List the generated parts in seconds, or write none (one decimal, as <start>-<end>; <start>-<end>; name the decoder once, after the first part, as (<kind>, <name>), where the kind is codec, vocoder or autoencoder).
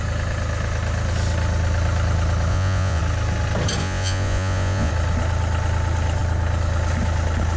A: 2.5-3.0 (vocoder, Vocos); 3.8-4.9